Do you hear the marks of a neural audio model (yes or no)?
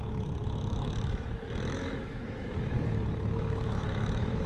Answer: yes